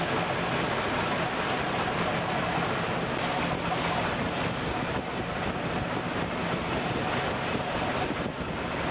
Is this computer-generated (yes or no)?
no